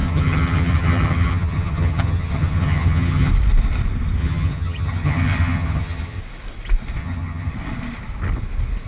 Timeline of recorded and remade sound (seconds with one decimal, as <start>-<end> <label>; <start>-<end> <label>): 0.0-3.3 remade; 3.3-4.2 recorded; 4.2-6.2 remade; 6.2-7.0 recorded; 7.0-7.5 remade; 7.5-8.9 recorded